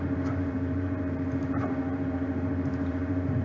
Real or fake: fake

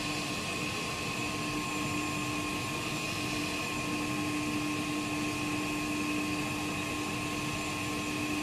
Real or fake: real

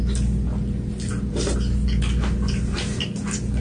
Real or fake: real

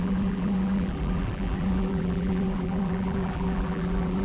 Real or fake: fake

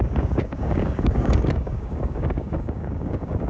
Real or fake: fake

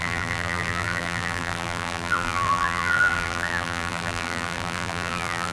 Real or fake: fake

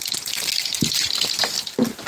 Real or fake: fake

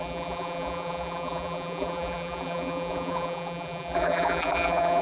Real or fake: fake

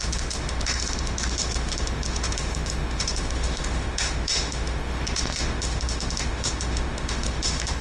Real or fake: fake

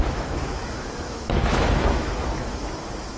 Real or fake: fake